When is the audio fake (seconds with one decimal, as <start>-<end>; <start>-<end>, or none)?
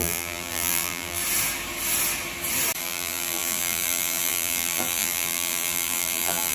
0.0-1.2; 2.8-6.5